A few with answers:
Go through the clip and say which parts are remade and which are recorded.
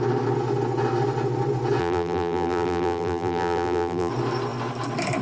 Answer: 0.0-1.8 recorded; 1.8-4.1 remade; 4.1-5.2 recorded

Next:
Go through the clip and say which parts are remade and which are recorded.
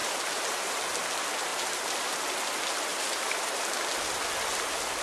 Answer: 0.0-0.8 remade; 0.8-1.5 recorded; 1.5-2.1 remade; 2.1-2.9 recorded; 2.9-3.8 remade; 3.8-5.0 recorded